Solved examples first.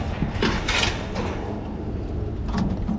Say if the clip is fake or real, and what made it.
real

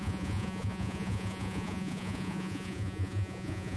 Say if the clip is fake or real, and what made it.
fake, vocoder, Vocos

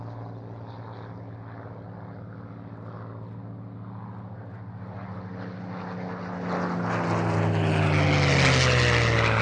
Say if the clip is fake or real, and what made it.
real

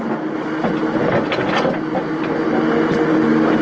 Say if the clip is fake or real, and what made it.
real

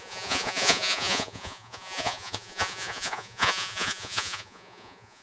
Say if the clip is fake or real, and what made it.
fake, vocoder, Vocos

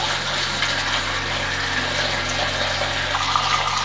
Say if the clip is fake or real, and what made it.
real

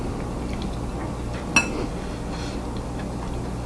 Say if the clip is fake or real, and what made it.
real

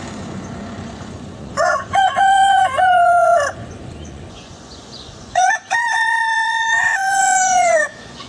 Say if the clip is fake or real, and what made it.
fake, vocoder, Vocos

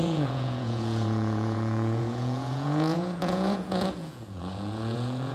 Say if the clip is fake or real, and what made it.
fake, vocoder, Vocos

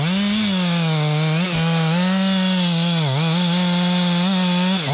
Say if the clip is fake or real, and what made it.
real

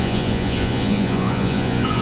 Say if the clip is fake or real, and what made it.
fake, vocoder, Vocos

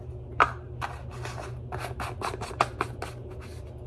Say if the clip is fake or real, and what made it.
real